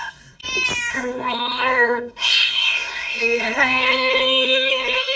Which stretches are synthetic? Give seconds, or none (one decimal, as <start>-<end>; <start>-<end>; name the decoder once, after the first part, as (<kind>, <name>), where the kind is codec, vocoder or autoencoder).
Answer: 0.0-0.4 (codec, SNAC); 0.9-5.2